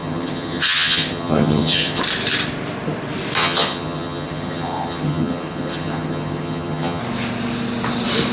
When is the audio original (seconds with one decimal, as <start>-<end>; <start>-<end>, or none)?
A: 2.0-3.4; 7.0-8.3